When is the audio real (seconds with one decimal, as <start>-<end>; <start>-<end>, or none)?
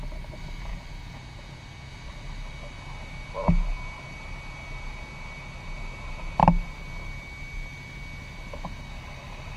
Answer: 0.0-0.7; 1.9-9.6